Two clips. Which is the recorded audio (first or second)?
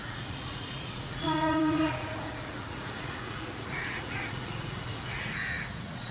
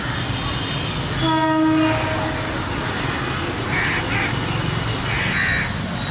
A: second